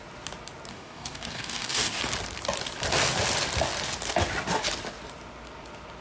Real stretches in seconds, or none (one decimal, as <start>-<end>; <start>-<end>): 0.0-0.7; 2.0-6.0